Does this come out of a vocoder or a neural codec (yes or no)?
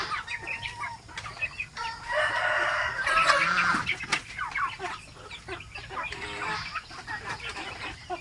no